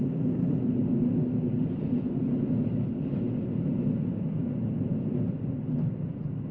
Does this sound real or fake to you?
real